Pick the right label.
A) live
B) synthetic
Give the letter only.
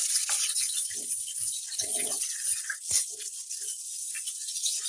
B